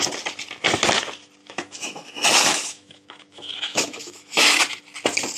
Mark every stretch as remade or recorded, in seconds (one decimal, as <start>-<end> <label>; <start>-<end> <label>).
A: 0.0-1.4 recorded; 1.4-4.6 remade; 4.6-5.4 recorded